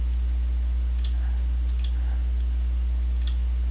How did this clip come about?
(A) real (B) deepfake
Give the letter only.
A